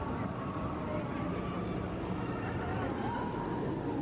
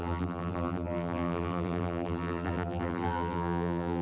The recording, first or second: first